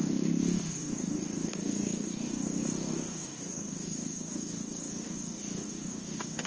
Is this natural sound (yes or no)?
no